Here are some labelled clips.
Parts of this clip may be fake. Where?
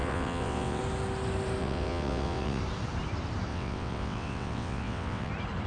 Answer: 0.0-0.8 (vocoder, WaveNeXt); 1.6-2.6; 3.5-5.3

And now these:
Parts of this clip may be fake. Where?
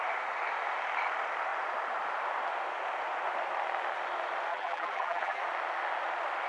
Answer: 4.5-5.4 (vocoder, BigVGAN v2)